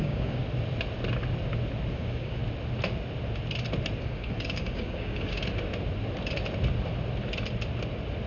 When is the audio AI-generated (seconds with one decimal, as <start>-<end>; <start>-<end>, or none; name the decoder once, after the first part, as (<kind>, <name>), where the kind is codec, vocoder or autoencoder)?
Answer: 0.0-0.4 (codec, DAC); 1.9-2.4; 4.0-5.4